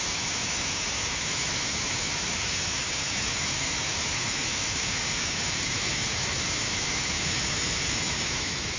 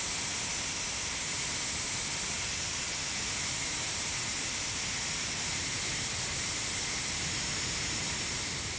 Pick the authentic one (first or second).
second